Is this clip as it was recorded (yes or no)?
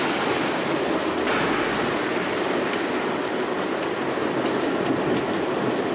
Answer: yes